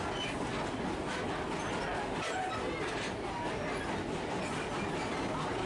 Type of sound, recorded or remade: recorded